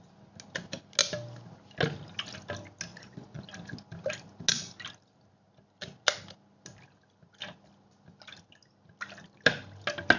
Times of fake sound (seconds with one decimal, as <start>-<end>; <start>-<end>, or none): 2.9-3.4